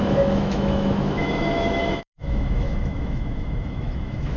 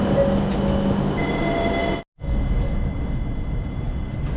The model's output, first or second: first